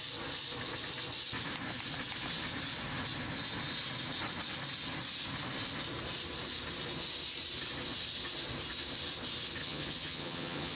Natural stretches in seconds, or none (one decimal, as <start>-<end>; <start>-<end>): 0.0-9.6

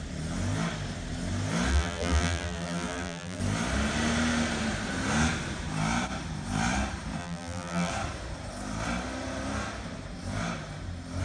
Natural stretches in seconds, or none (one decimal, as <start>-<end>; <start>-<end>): 0.0-1.7; 3.4-7.2; 7.9-11.2

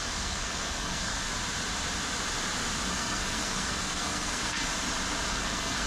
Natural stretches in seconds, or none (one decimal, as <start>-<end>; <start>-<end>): 1.3-2.9; 4.7-5.3

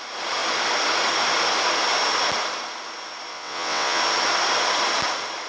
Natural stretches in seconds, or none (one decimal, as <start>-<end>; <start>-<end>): 0.0-3.3; 4.0-5.5

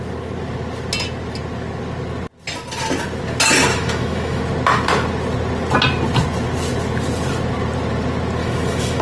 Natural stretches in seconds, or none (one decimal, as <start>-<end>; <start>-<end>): 0.0-3.7; 4.4-8.4